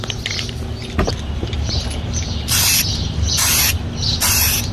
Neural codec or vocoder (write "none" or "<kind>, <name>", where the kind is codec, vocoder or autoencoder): none